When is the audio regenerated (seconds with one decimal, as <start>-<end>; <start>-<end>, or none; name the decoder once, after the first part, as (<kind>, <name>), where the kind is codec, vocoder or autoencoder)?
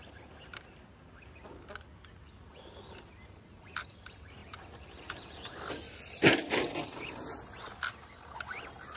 none